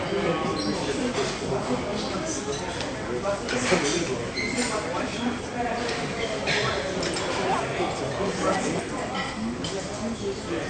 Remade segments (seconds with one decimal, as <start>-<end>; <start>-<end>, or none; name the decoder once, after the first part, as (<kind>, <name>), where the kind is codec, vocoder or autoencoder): 4.9-6.2 (vocoder, BigVGAN v2)